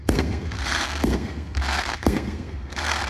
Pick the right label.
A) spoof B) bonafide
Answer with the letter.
A